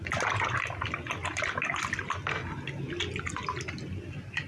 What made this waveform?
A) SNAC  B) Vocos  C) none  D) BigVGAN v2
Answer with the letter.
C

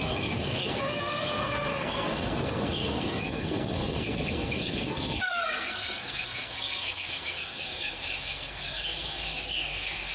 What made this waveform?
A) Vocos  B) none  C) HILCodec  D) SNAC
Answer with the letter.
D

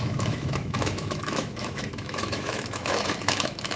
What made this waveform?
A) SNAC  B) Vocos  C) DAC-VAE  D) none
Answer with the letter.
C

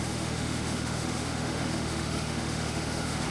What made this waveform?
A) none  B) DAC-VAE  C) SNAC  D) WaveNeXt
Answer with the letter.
B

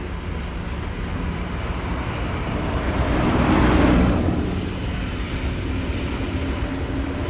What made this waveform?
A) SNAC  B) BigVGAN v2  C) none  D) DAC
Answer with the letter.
C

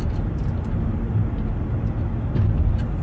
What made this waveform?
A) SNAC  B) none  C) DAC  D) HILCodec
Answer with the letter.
B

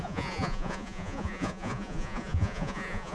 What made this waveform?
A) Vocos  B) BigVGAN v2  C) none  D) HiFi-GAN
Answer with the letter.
A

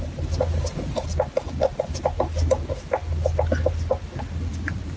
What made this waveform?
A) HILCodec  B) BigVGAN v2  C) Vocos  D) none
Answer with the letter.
D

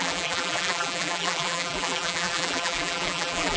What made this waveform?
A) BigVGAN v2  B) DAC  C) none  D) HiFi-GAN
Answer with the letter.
A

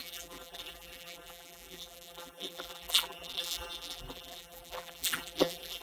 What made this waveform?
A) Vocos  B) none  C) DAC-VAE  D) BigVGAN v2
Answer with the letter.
D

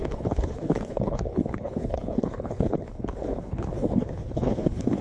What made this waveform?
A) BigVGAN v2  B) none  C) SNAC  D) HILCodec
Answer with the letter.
D